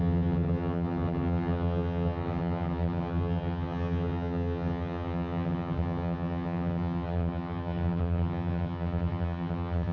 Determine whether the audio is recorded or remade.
remade